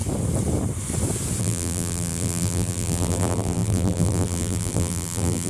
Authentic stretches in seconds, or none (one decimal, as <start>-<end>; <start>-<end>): 0.0-1.4